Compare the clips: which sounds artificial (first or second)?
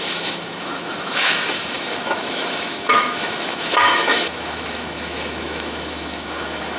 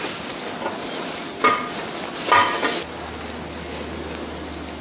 first